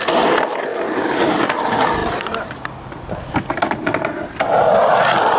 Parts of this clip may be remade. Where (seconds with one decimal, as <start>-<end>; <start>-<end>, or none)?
none